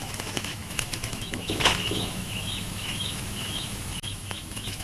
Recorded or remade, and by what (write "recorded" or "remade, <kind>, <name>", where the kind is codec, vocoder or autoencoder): remade, autoencoder, DAC-VAE